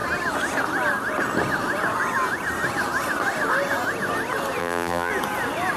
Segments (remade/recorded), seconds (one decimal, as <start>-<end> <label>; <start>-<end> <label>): 0.0-4.6 recorded; 4.6-5.1 remade; 5.1-5.8 recorded